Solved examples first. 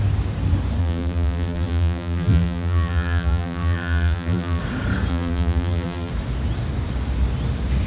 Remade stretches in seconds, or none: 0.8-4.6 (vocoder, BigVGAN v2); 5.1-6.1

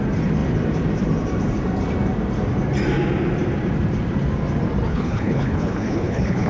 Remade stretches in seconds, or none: 4.9-6.5 (codec, HILCodec)

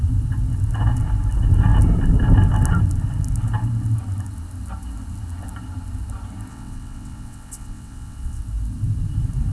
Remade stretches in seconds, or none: 6.5-8.4 (vocoder, WaveNeXt)